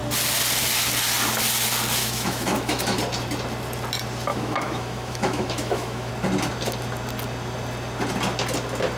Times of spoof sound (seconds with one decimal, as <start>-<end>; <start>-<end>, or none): 2.0-3.0; 4.3-6.1